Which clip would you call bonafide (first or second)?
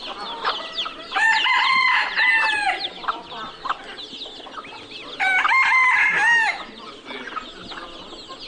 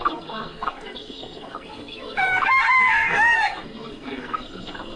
first